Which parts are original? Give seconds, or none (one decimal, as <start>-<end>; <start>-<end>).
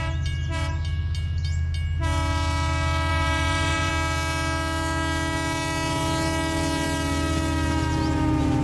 0.0-3.1; 3.9-8.6